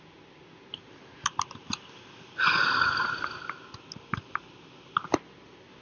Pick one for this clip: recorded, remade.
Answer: recorded